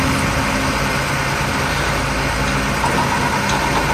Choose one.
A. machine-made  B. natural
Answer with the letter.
B